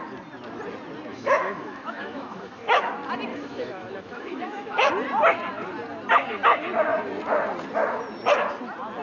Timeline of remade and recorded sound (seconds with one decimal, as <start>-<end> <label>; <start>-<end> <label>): 0.0-1.1 recorded; 1.1-2.9 remade; 2.9-3.3 recorded; 3.3-4.9 remade; 4.9-9.0 recorded